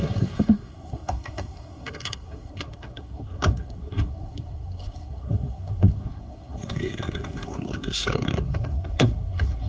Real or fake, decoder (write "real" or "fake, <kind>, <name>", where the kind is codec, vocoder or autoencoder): fake, codec, SNAC